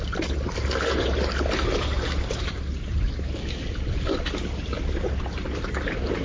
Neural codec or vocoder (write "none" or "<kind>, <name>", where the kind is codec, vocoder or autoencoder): none